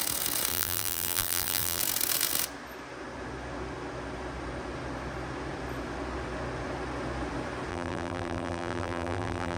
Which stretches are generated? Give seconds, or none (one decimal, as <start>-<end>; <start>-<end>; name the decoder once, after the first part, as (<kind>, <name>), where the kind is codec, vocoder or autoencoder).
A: 0.5-1.8 (vocoder, BigVGAN v2); 7.7-9.6